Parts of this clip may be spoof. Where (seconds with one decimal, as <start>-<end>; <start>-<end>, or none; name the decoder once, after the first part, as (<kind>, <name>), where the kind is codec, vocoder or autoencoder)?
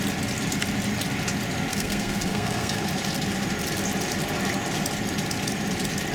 1.7-2.8 (codec, SNAC)